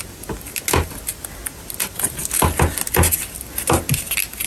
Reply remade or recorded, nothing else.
recorded